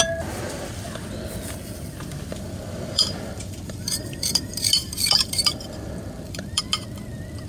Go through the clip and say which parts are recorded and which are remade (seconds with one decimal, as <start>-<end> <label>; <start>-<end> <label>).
0.0-2.3 recorded; 2.3-6.6 remade; 6.6-7.5 recorded

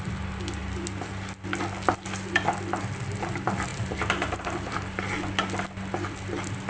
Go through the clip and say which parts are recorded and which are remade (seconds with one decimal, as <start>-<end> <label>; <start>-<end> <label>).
0.0-3.7 recorded; 3.7-5.0 remade; 5.0-6.7 recorded

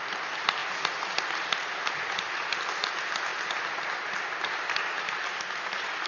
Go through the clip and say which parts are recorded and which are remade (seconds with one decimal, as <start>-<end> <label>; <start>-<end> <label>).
0.0-6.1 recorded

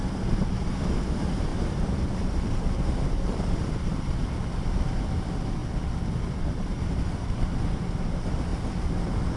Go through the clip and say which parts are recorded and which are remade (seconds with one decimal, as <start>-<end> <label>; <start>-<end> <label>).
0.0-1.5 recorded; 1.5-4.4 remade; 4.4-5.6 recorded; 5.6-8.1 remade; 8.1-9.4 recorded

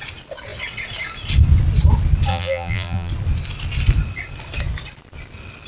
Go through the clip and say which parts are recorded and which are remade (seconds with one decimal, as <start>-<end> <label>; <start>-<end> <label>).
0.0-2.3 recorded; 2.3-3.1 remade; 3.1-5.7 recorded

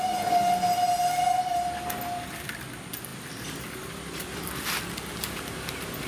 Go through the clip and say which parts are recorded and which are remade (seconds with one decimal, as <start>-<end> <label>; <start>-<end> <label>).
0.0-6.1 recorded

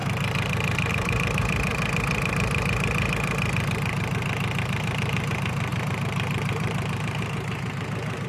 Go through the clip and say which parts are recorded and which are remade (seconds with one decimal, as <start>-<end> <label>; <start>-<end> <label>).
0.0-0.9 recorded; 0.9-1.7 remade; 1.7-4.6 recorded; 4.6-8.3 remade

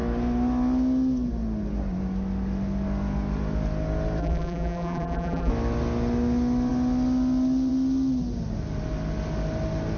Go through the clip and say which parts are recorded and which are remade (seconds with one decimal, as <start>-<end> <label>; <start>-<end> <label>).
0.0-4.2 recorded; 4.2-5.5 remade; 5.5-10.0 recorded